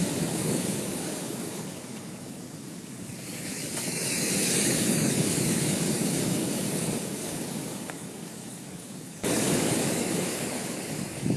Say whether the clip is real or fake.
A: fake